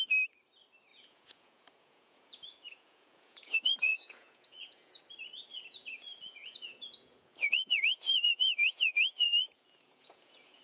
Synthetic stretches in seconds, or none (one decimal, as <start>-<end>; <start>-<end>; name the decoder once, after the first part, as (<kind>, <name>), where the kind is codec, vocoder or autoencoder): 0.9-5.0 (vocoder, Vocos); 5.5-10.6